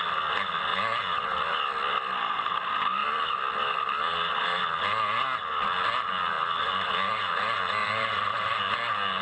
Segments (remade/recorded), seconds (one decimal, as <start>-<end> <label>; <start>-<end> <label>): 0.0-7.8 recorded; 7.8-8.5 remade; 8.5-9.2 recorded

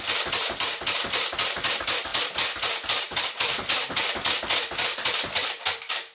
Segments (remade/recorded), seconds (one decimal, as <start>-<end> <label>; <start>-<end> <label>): 0.0-6.1 recorded